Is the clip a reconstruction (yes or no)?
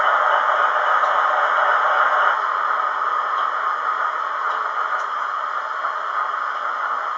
no